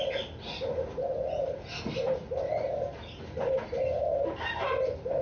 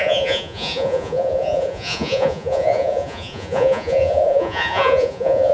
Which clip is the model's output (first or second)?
second